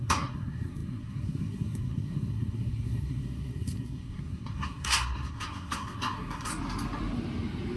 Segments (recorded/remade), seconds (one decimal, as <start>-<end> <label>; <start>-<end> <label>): 0.0-6.5 remade; 6.5-7.8 recorded